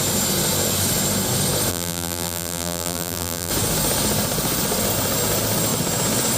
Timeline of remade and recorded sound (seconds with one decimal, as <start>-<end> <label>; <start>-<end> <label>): 0.0-1.7 recorded; 1.7-3.5 remade; 3.5-6.4 recorded